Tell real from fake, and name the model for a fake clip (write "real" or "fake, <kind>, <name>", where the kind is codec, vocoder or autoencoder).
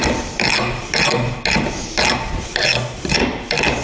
real